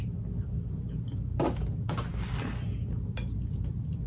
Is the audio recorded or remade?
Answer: recorded